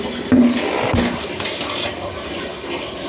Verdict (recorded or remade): recorded